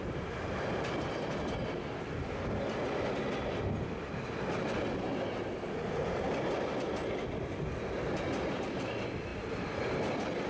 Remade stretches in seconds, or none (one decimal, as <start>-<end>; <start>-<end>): none